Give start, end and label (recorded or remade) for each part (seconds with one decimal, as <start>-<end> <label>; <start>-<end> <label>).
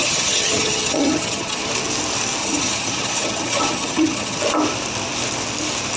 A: 0.0-1.7 remade; 1.7-2.4 recorded; 2.4-4.4 remade; 4.4-6.0 recorded